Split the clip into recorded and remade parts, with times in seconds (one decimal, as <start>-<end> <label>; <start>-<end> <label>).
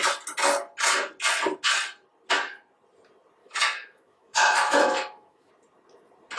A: 0.0-3.4 recorded; 3.4-5.5 remade; 5.5-6.4 recorded